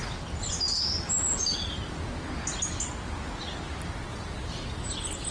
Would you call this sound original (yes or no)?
yes